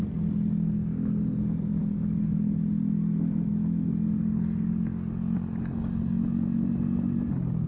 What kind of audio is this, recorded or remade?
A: recorded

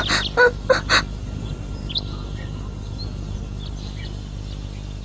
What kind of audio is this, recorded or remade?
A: recorded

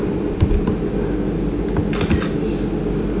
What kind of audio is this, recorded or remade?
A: recorded